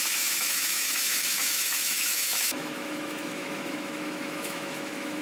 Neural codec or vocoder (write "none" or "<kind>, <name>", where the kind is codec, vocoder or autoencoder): autoencoder, DAC-VAE